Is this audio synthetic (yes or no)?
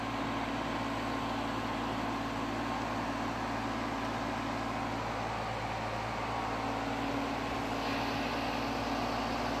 no